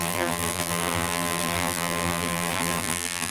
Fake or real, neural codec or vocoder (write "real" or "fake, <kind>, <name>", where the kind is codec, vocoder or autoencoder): fake, vocoder, BigVGAN v2